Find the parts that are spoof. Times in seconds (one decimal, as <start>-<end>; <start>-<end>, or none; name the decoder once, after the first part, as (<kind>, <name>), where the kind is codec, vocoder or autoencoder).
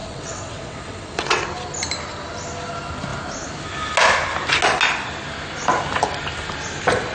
0.0-1.4 (vocoder, WaveNeXt)